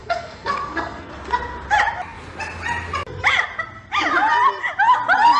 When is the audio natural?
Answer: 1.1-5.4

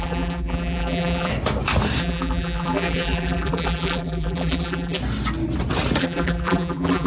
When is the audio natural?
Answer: 1.3-2.0; 5.0-6.0

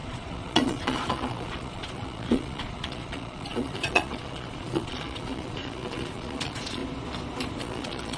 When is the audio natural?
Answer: 6.8-7.6

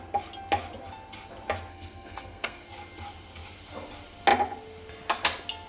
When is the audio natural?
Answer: 0.0-1.7; 2.7-5.7

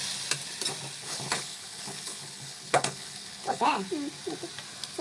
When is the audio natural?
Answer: 0.0-1.0; 3.9-5.0